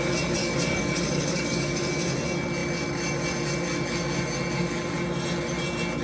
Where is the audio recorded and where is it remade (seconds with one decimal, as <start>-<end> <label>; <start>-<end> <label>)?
0.0-0.4 recorded; 0.4-1.9 remade; 1.9-6.0 recorded